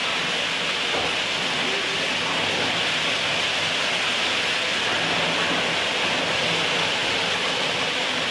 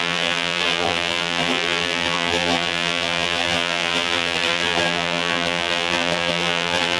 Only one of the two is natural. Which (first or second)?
first